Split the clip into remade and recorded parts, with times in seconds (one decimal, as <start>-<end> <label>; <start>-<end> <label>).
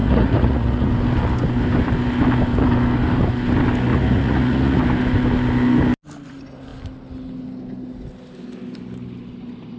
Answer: 0.0-0.9 remade; 0.9-3.9 recorded; 3.9-4.8 remade; 4.8-9.8 recorded